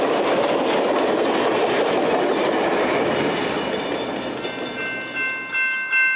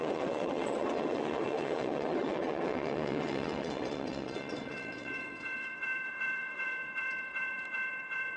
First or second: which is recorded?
first